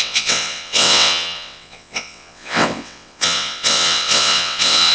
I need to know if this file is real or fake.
fake